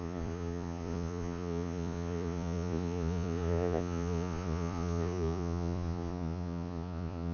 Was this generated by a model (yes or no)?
yes